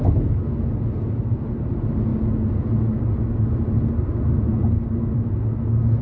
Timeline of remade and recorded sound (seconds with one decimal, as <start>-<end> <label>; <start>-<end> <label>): 0.0-6.0 recorded